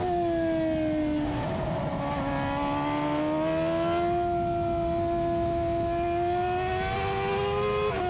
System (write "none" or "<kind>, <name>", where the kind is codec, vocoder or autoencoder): none